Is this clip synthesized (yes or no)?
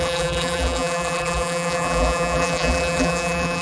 yes